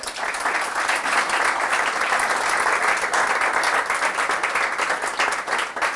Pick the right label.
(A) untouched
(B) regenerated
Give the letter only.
A